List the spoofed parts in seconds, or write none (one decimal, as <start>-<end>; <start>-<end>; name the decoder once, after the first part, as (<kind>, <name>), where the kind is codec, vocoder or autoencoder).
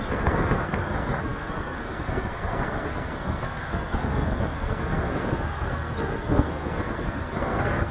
0.0-7.9 (codec, SNAC)